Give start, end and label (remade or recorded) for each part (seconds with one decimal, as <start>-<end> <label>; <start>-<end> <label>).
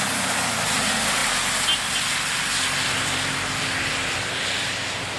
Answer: 0.0-5.2 recorded